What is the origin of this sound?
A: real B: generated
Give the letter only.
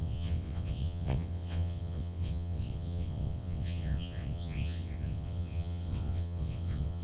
B